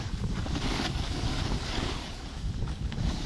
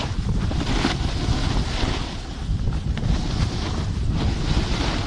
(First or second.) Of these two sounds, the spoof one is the first